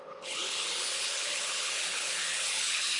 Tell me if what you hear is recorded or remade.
remade